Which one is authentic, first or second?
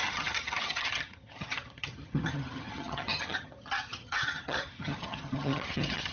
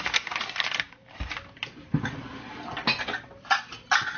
second